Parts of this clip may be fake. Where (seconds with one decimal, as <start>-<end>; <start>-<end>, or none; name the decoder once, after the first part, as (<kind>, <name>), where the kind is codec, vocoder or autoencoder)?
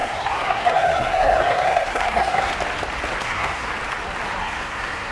0.0-2.5 (codec, SNAC); 3.2-3.7; 4.4-5.1